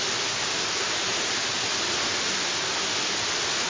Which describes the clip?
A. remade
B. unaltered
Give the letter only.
B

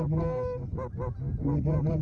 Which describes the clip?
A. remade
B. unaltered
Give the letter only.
B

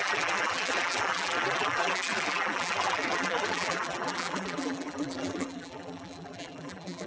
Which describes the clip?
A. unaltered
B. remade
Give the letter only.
B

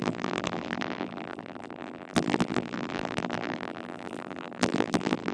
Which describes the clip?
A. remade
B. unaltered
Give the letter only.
A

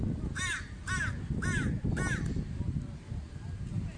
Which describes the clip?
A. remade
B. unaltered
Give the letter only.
B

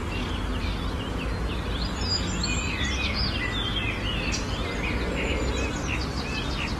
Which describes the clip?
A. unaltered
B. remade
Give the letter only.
A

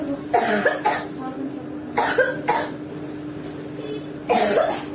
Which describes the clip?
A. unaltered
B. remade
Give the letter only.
A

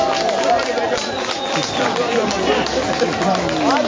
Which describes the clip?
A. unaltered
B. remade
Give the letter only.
A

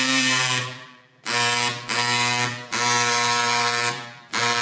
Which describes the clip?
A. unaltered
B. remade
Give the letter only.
B